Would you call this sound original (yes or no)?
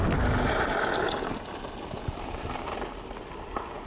yes